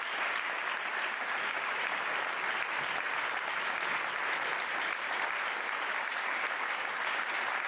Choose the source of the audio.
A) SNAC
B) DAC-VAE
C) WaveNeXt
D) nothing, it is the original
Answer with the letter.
D